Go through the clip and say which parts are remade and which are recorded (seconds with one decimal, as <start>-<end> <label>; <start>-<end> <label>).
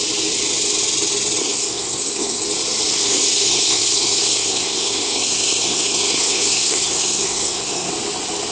0.0-1.4 recorded; 1.4-2.4 remade; 2.4-2.9 recorded; 2.9-7.9 remade; 7.9-8.5 recorded